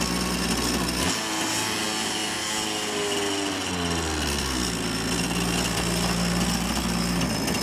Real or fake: real